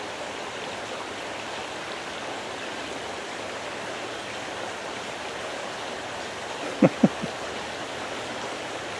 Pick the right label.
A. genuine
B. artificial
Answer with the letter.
A